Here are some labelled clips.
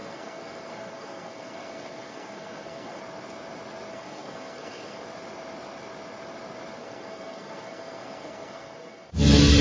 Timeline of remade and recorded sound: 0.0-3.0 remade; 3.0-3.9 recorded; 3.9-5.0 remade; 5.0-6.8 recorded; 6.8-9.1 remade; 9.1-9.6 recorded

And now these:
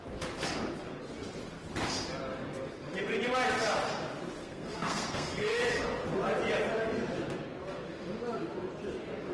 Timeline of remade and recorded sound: 0.0-4.4 recorded; 4.4-5.6 remade; 5.6-9.3 recorded